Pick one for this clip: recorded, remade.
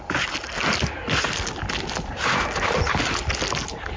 recorded